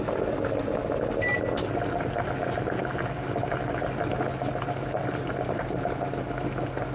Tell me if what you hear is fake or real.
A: real